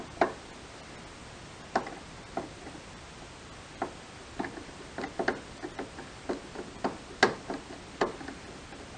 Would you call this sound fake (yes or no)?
no